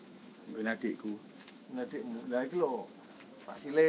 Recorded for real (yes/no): no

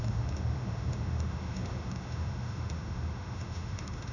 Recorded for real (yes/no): no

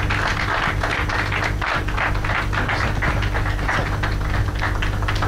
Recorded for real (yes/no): yes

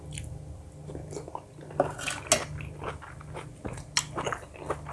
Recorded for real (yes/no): yes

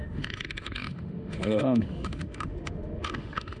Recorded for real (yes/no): no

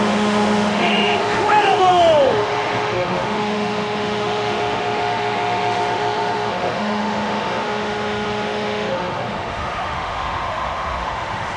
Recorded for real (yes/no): no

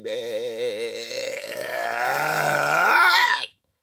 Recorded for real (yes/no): no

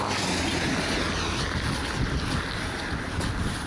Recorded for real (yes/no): yes